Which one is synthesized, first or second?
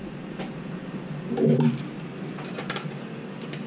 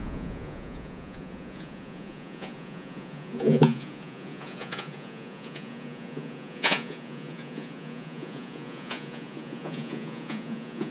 second